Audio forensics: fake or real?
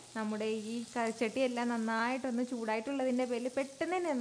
real